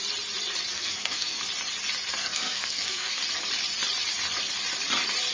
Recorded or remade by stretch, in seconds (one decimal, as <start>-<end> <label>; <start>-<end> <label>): 0.0-0.7 recorded; 0.7-1.4 remade; 1.4-2.2 recorded; 2.2-3.2 remade; 3.2-5.3 recorded